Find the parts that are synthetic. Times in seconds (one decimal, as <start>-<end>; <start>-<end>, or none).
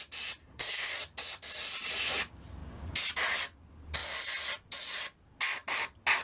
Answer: 0.4-0.9